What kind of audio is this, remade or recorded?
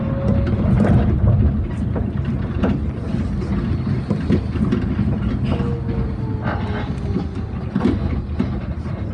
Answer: recorded